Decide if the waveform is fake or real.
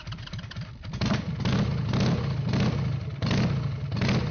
real